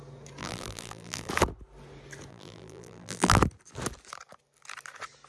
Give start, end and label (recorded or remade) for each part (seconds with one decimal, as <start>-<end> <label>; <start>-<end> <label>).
0.0-0.4 recorded; 0.4-1.3 remade; 1.3-2.3 recorded; 2.3-3.4 remade; 3.4-5.3 recorded